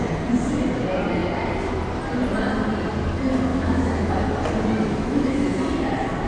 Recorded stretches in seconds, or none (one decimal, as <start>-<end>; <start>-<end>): 0.0-3.5; 4.1-4.9; 5.5-6.3